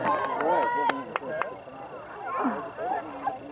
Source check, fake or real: real